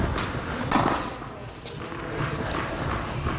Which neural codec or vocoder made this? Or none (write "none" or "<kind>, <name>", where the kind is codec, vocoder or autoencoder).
none